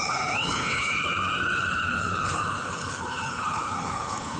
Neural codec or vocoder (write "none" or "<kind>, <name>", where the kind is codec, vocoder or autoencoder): codec, HILCodec